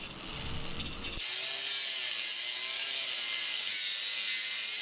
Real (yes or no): yes